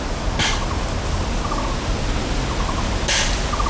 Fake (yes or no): no